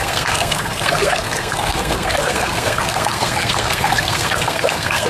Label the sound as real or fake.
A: fake